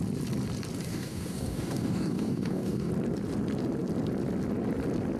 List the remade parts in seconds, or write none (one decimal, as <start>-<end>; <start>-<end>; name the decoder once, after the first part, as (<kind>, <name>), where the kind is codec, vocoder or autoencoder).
0.9-2.9 (codec, DAC)